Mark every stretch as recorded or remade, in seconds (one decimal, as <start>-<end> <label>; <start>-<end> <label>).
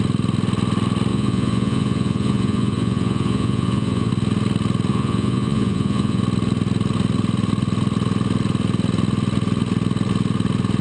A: 0.0-1.1 recorded; 1.1-4.1 remade; 4.1-4.9 recorded; 4.9-6.2 remade; 6.2-10.8 recorded